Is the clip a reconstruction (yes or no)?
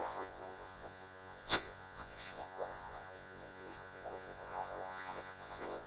yes